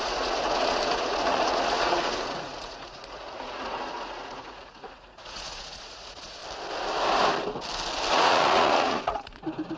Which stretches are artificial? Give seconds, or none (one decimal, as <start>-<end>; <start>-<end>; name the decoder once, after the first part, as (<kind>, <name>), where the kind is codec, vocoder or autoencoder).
0.0-6.4 (vocoder, Vocos); 8.1-9.8